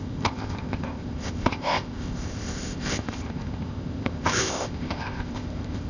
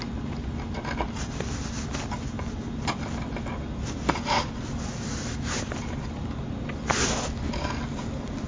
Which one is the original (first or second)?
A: second